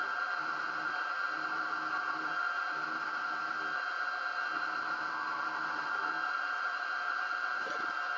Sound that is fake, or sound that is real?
real